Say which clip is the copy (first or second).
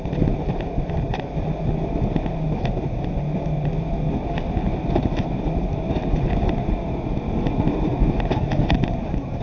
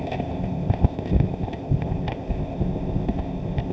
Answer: second